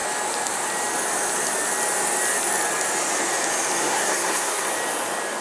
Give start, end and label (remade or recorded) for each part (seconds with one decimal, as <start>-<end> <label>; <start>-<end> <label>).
0.0-3.8 recorded; 3.8-4.7 remade; 4.7-5.4 recorded